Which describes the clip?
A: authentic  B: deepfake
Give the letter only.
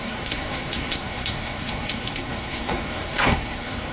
B